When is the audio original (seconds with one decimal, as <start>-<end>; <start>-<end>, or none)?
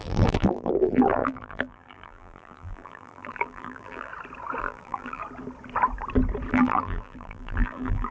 4.1-4.6; 5.2-6.5